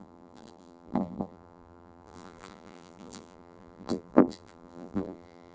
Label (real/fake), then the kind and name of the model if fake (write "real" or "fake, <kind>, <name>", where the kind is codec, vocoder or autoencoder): fake, vocoder, BigVGAN v2